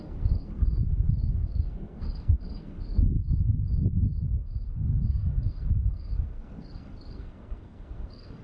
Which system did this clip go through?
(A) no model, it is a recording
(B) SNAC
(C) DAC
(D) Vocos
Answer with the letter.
B